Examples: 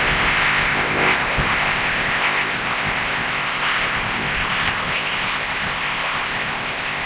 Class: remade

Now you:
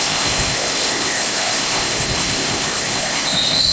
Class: remade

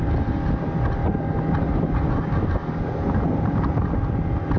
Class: recorded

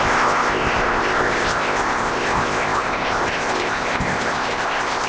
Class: remade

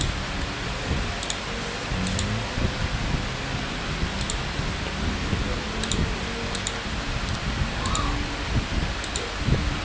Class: recorded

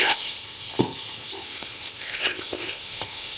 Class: remade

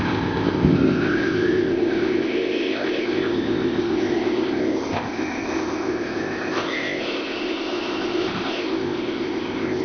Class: remade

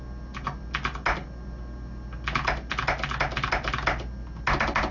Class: recorded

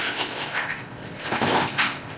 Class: remade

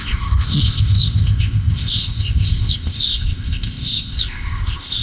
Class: remade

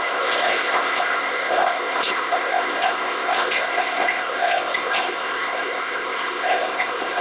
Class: remade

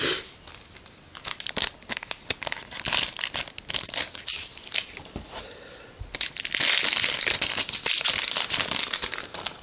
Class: recorded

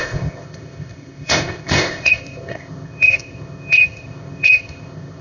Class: remade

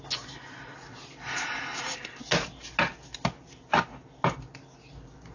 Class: recorded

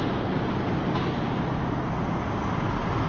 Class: recorded